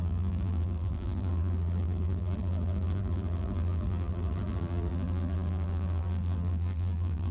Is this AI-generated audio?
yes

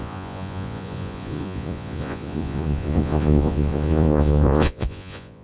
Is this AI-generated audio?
yes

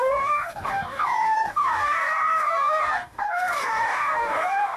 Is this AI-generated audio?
yes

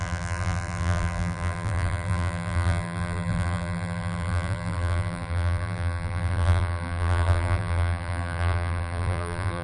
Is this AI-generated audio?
yes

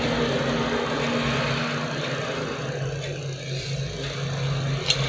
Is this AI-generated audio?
no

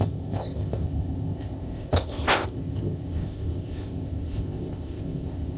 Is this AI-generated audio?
yes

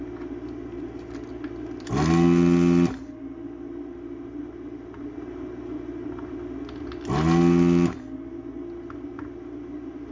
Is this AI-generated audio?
no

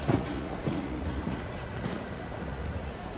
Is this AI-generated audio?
yes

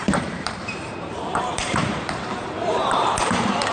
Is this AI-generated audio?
yes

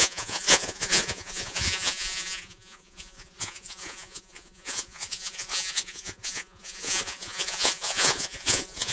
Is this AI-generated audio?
yes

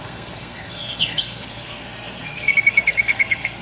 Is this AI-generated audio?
yes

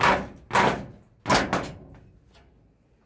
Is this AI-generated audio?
no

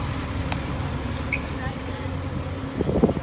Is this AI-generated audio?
no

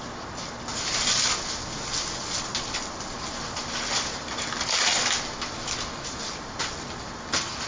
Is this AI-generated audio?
no